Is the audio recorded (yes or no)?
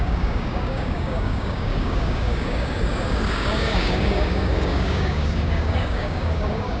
no